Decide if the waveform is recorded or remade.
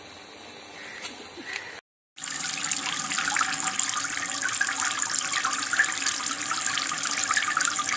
recorded